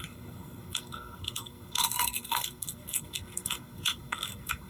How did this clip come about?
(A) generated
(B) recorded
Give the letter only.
A